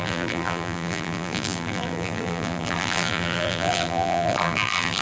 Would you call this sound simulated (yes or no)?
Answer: yes